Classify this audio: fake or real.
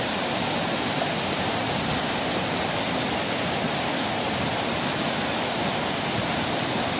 real